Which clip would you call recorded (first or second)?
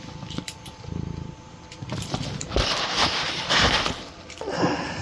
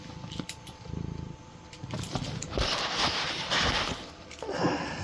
second